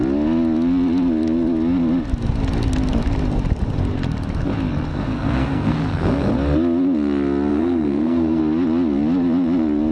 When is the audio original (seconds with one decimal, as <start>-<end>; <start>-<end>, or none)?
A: 0.0-4.9; 6.3-7.5; 8.4-9.9